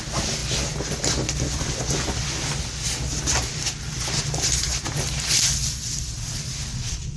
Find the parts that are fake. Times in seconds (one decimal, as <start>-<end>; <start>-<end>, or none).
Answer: 6.7-7.2